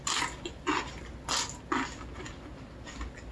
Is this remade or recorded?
recorded